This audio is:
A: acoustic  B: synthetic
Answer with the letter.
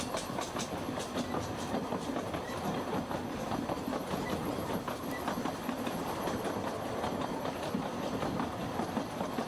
A